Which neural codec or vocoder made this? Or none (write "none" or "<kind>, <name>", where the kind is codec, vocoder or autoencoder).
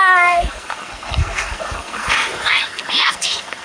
codec, SNAC